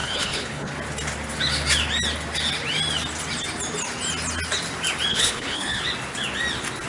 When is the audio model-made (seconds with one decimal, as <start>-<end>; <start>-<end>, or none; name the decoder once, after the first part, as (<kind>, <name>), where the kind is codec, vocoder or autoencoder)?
0.0-0.7 (codec, HILCodec); 5.1-5.8